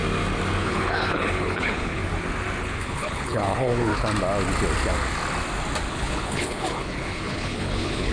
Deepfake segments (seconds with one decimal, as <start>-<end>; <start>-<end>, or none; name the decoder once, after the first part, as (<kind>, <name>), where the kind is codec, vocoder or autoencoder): 0.6-2.0 (codec, HILCodec); 2.6-3.9; 5.9-8.1